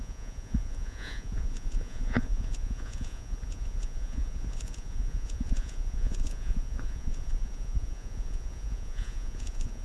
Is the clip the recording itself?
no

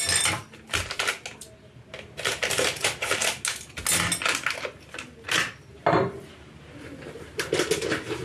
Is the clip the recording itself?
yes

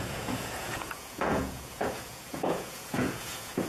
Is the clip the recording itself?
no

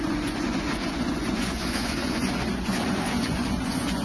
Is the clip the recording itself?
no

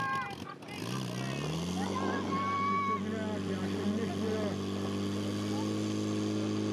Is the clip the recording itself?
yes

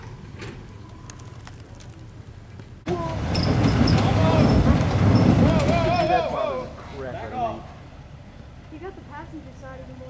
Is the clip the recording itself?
yes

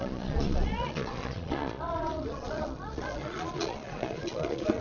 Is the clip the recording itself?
no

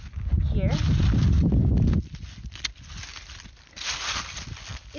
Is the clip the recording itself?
yes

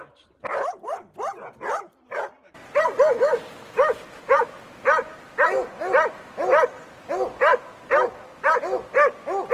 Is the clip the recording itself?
yes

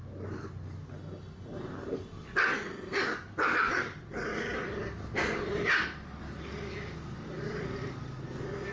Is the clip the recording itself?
yes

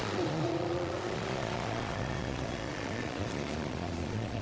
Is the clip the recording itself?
no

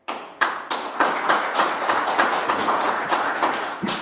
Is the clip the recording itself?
no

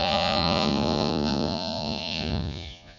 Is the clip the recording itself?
no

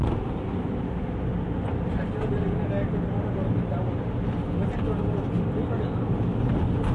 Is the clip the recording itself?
yes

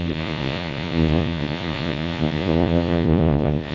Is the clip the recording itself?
no